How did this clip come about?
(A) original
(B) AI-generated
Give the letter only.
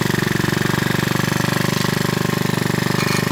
A